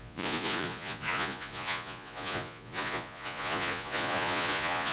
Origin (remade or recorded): remade